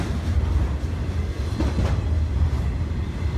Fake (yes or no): no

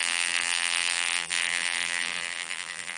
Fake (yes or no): yes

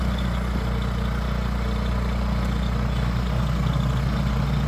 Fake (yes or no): no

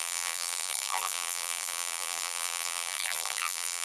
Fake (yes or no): yes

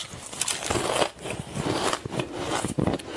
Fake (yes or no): no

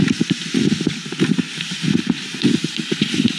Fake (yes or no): no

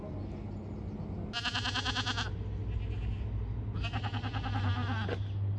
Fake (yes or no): no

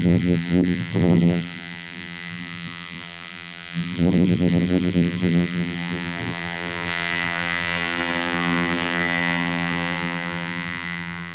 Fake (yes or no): yes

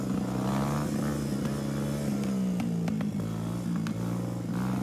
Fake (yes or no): no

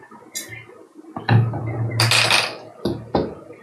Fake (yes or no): no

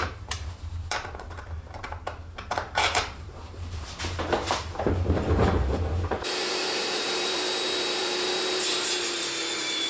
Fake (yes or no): yes